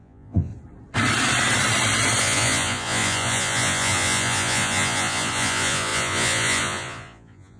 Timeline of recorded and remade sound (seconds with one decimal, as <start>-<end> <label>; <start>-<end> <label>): 0.0-0.5 remade; 0.5-2.2 recorded; 2.2-7.6 remade

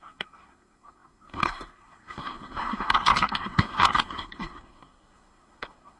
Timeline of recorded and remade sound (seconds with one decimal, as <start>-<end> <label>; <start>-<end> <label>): 0.0-6.0 remade